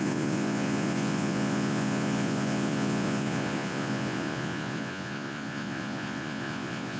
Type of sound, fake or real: fake